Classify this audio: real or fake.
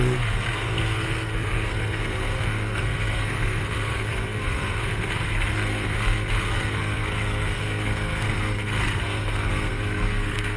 fake